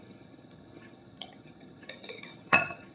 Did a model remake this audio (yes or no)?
yes